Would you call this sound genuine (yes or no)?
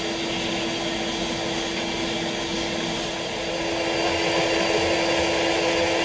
yes